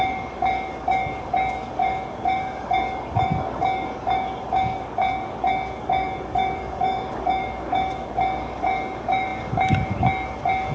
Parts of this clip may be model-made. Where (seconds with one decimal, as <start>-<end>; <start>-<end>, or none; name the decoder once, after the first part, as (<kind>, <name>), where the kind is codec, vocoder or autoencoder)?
0.0-10.7 (codec, DAC)